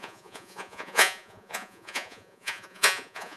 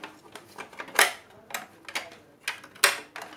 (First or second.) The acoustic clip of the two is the second